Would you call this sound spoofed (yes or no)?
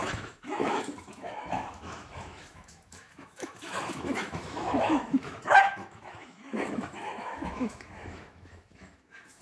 yes